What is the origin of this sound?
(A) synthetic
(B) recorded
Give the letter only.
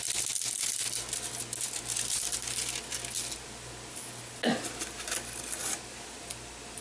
B